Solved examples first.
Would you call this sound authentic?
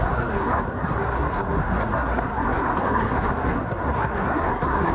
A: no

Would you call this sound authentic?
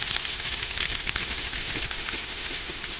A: no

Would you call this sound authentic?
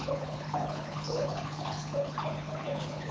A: no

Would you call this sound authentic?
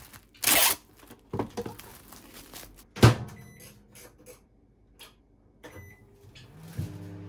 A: yes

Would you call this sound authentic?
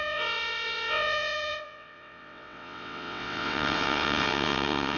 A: no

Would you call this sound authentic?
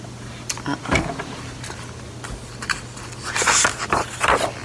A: yes